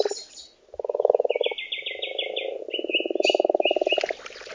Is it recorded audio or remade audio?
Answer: recorded